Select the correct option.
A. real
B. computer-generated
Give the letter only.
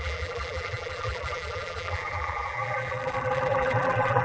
B